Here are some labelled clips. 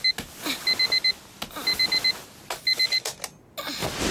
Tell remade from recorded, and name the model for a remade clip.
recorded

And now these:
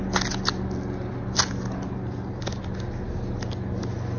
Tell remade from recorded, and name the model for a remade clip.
recorded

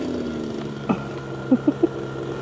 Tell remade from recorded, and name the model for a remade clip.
recorded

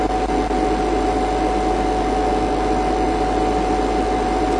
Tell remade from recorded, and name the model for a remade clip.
remade, vocoder, BigVGAN v2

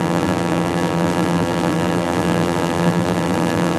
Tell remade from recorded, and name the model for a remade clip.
remade, vocoder, BigVGAN v2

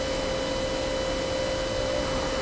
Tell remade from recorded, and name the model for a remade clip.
recorded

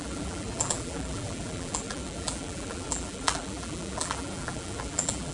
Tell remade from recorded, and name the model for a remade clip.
remade, vocoder, BigVGAN v2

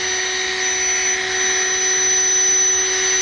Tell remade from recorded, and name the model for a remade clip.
recorded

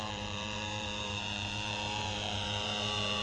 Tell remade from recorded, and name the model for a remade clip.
remade, vocoder, BigVGAN v2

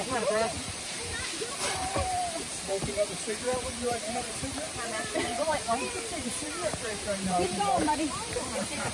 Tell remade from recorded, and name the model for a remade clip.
remade, vocoder, BigVGAN v2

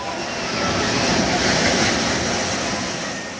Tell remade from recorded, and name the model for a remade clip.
recorded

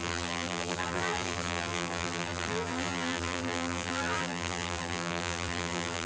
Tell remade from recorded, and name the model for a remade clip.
remade, vocoder, BigVGAN v2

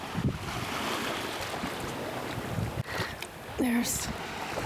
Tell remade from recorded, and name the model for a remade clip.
recorded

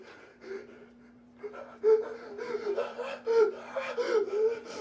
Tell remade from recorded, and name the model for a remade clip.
remade, vocoder, BigVGAN v2